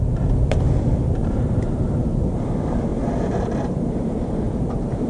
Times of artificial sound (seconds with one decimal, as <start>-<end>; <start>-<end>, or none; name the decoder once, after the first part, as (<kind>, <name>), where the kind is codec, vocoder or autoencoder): 1.2-2.5 (vocoder, BigVGAN v2); 2.9-5.1